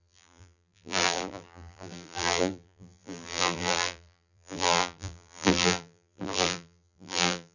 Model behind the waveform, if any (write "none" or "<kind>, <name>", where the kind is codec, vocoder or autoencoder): vocoder, BigVGAN v2